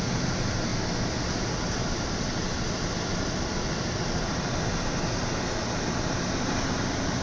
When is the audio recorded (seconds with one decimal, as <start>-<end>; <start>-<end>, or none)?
0.0-7.2